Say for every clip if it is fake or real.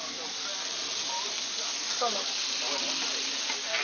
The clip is real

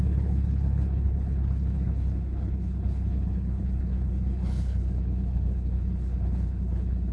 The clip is fake